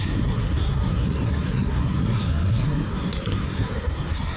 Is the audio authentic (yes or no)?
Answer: no